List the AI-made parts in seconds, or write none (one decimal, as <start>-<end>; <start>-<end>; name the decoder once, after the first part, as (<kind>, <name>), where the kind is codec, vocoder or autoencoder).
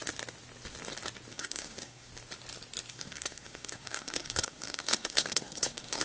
1.3-2.1 (codec, SNAC); 2.9-6.0